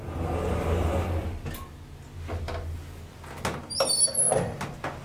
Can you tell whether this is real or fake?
real